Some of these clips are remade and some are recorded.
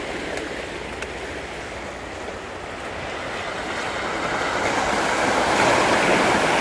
recorded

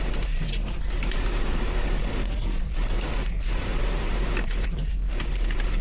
remade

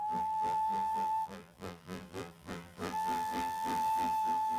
remade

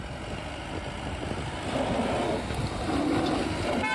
recorded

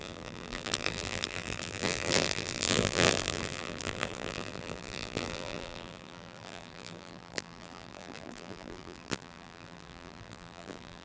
remade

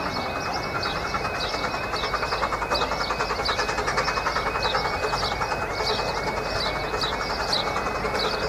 recorded